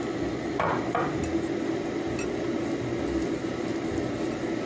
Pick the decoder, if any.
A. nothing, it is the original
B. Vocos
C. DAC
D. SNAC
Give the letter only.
A